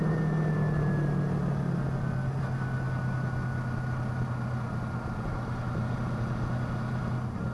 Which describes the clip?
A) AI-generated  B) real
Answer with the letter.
B